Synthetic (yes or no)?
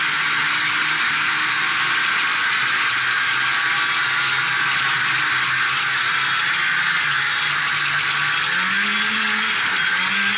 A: no